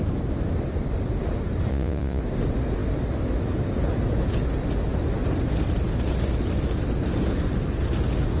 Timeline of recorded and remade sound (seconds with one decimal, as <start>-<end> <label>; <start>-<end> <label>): 0.0-1.7 recorded; 1.7-2.2 remade; 2.2-8.4 recorded